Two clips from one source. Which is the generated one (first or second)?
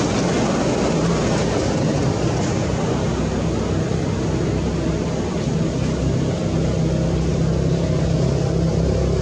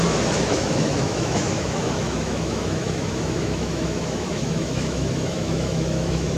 second